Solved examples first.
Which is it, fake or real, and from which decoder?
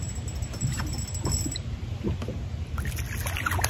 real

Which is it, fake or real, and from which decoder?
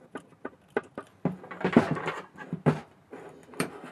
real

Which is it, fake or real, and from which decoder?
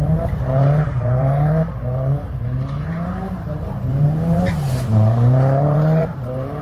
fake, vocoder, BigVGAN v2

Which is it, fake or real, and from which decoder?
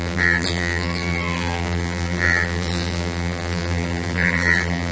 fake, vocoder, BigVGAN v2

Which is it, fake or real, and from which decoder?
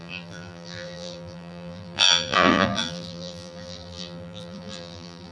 fake, vocoder, BigVGAN v2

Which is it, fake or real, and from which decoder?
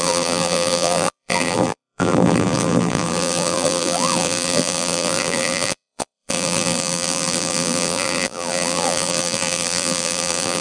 fake, vocoder, BigVGAN v2